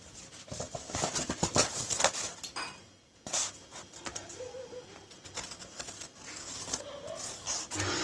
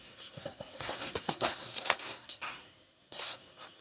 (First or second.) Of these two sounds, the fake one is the second